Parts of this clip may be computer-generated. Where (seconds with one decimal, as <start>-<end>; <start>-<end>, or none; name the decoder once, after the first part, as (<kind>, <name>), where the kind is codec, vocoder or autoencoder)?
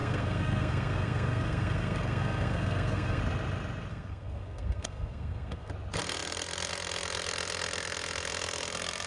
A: 0.0-3.2 (codec, SNAC); 3.9-5.7